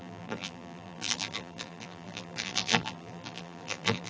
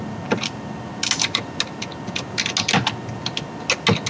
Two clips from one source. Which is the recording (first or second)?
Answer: second